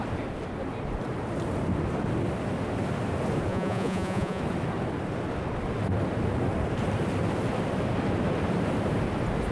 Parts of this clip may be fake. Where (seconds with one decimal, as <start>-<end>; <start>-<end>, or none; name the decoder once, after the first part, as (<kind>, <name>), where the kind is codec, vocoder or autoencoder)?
3.5-4.4 (vocoder, Vocos)